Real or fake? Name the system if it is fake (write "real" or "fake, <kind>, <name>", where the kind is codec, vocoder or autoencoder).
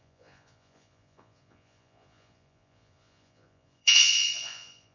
fake, vocoder, Vocos